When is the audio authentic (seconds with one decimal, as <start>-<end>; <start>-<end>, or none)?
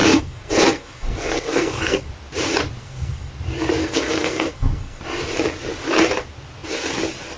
2.1-2.8; 3.3-3.8; 5.0-7.4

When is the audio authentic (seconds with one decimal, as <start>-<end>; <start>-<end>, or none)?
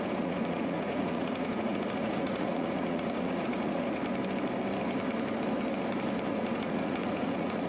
4.0-6.3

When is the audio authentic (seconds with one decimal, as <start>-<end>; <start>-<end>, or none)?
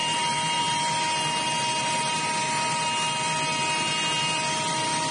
0.0-5.1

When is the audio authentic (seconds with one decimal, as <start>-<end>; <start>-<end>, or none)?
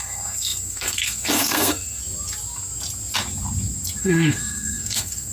2.0-4.0